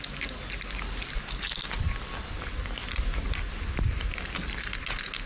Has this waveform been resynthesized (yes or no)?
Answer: no